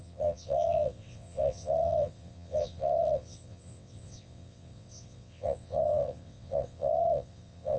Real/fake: fake